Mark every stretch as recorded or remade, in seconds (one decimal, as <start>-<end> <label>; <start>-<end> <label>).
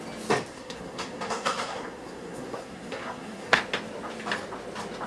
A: 0.0-0.5 recorded; 0.5-3.6 remade; 3.6-5.1 recorded